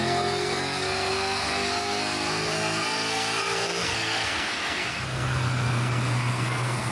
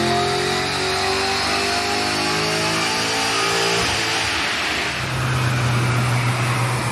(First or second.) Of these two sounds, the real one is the second